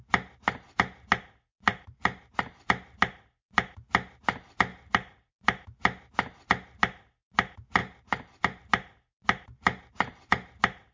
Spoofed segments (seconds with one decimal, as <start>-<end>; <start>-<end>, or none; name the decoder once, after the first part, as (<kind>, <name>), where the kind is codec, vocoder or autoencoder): 1.7-2.6 (vocoder, BigVGAN v2); 4.7-5.3; 7.8-8.6; 9.5-10.5